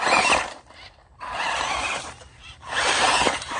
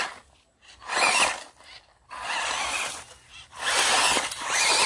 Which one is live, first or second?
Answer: second